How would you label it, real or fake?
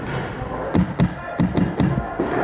real